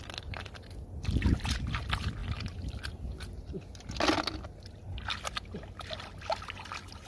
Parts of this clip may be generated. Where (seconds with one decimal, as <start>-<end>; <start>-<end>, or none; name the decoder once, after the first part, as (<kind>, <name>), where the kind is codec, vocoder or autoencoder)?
none

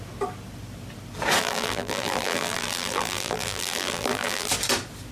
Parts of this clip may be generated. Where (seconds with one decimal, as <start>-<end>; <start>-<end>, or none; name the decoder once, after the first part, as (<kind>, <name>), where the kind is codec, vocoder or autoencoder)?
1.4-4.5 (vocoder, BigVGAN v2)

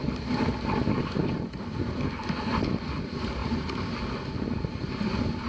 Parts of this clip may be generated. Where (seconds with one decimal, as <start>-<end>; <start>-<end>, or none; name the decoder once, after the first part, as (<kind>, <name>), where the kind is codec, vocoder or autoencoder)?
3.4-4.2 (vocoder, BigVGAN v2)

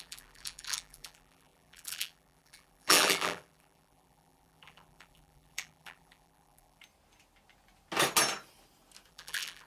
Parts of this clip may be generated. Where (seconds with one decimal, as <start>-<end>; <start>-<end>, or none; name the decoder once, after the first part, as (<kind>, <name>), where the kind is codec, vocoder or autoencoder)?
0.0-6.8 (vocoder, BigVGAN v2); 9.1-9.7

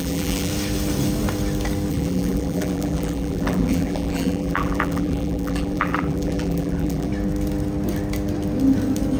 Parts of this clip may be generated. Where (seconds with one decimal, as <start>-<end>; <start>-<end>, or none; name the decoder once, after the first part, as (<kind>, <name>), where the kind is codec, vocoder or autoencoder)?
0.0-0.5 (vocoder, BigVGAN v2); 1.9-7.1

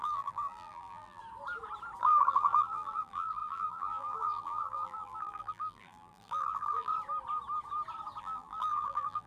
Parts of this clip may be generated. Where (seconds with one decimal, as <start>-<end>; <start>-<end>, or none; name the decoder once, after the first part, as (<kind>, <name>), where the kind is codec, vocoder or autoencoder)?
0.0-1.2 (vocoder, BigVGAN v2); 2.0-6.9; 8.2-9.3

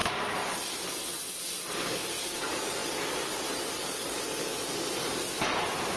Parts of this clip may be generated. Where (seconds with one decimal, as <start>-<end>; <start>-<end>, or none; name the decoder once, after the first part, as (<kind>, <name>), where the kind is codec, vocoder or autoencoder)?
0.6-2.8 (vocoder, BigVGAN v2)

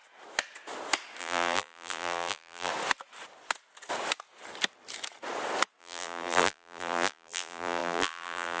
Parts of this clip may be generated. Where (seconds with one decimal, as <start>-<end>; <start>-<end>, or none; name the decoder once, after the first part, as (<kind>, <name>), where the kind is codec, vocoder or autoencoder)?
1.2-2.7 (vocoder, BigVGAN v2); 5.8-8.6